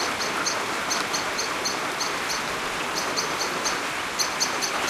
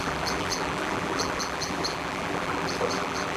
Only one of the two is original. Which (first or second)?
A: first